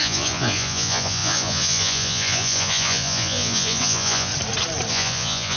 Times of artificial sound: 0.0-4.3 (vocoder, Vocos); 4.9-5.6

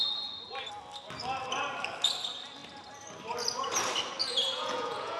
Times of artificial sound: 4.2-5.2 (vocoder, Vocos)

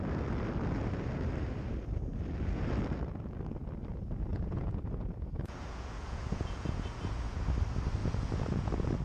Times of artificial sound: 4.3-7.4 (vocoder, Vocos); 8.0-9.0